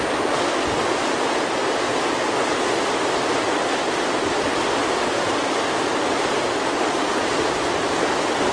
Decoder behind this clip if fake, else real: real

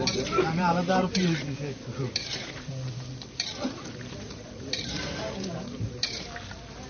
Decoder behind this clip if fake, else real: fake, vocoder, BigVGAN v2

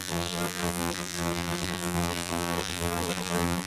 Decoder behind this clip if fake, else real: fake, vocoder, BigVGAN v2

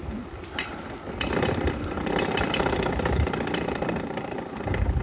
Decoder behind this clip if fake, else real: fake, vocoder, BigVGAN v2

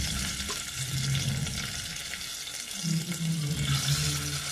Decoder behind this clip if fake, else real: real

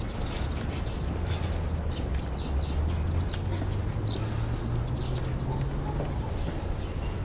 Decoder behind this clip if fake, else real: real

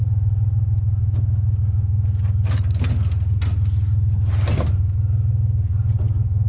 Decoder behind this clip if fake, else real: real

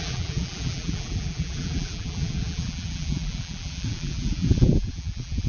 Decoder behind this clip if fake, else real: fake, vocoder, BigVGAN v2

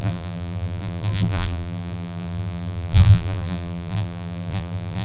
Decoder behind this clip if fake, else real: fake, vocoder, BigVGAN v2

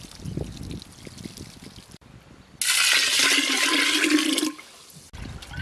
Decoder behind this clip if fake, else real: real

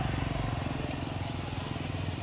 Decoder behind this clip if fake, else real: real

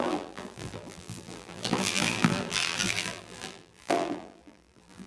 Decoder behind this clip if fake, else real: fake, vocoder, BigVGAN v2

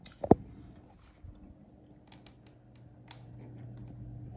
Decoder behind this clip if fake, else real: real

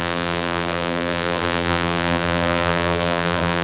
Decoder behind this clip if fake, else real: fake, vocoder, BigVGAN v2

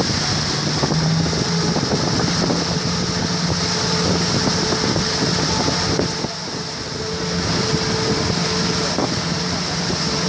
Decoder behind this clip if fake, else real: real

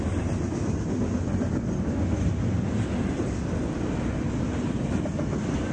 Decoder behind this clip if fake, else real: real